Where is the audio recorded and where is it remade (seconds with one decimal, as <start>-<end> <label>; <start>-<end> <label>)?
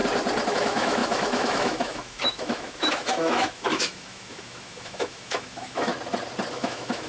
0.0-0.5 recorded; 0.5-5.9 remade; 5.9-6.5 recorded; 6.5-7.1 remade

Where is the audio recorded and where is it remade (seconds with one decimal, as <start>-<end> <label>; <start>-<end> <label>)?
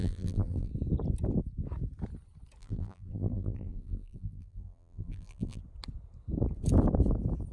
0.0-0.7 remade; 0.7-2.6 recorded; 2.6-5.6 remade; 5.6-7.5 recorded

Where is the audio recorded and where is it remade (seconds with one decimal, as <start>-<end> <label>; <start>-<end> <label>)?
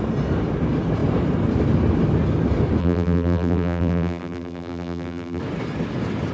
0.0-2.8 recorded; 2.8-5.4 remade; 5.4-6.3 recorded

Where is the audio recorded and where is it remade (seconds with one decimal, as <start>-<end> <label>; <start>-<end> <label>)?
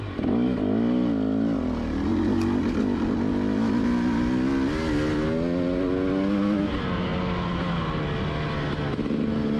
0.0-9.6 recorded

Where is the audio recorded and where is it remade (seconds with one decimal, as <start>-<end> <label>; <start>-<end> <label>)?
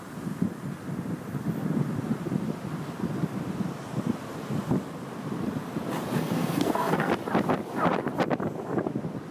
0.0-6.2 recorded; 6.2-7.1 remade; 7.1-9.3 recorded